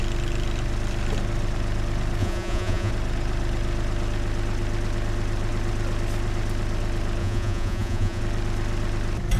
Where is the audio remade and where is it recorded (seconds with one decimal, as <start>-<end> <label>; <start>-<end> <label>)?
0.0-2.2 recorded; 2.2-2.9 remade; 2.9-7.2 recorded; 7.2-8.2 remade; 8.2-9.4 recorded